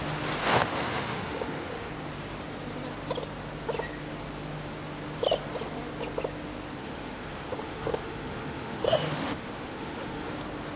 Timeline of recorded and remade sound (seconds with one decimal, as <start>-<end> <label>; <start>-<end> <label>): 0.0-0.5 recorded; 0.5-1.9 remade; 1.9-6.8 recorded; 6.8-10.3 remade; 10.3-10.8 recorded